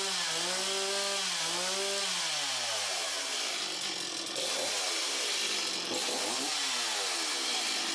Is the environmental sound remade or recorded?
recorded